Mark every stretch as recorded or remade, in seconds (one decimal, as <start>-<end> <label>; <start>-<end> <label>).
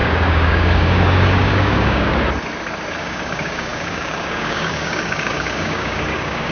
0.0-2.1 remade; 2.1-3.0 recorded; 3.0-6.5 remade